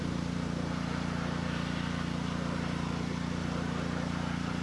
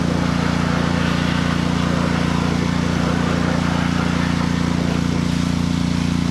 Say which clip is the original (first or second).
second